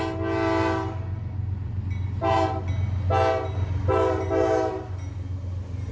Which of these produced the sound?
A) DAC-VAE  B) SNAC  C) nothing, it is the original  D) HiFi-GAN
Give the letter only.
C